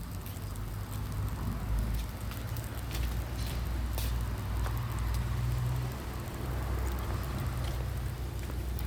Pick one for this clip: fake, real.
real